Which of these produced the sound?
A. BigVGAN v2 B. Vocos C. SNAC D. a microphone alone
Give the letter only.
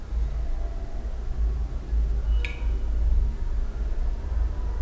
D